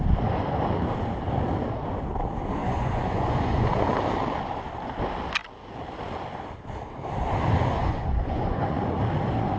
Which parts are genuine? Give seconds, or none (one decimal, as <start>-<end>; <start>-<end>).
0.0-2.6; 4.0-7.8; 9.0-9.6